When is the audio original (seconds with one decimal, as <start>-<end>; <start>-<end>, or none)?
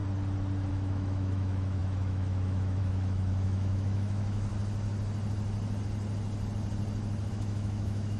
0.0-0.7; 4.5-7.3